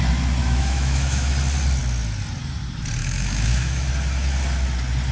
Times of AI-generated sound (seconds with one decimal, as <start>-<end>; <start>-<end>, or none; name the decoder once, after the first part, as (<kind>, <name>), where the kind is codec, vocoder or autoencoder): 0.4-1.3 (autoencoder, DAC-VAE); 3.0-3.9